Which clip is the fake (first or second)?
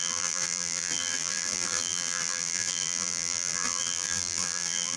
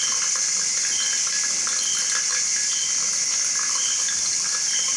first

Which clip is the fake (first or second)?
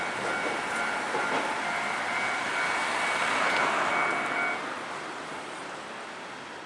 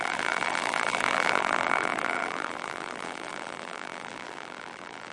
second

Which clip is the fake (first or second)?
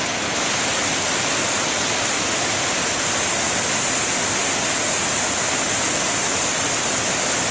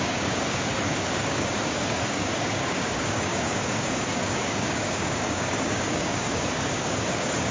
second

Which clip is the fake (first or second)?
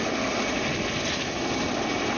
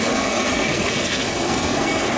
second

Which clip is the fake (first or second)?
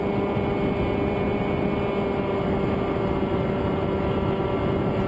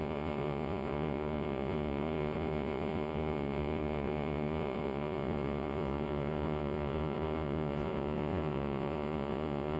second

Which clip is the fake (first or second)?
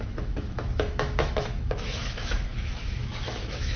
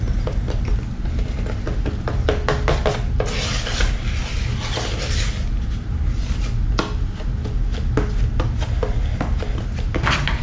first